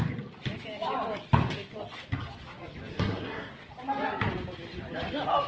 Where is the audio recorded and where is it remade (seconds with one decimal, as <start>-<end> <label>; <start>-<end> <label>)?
0.0-2.9 recorded; 2.9-3.5 remade; 3.5-5.5 recorded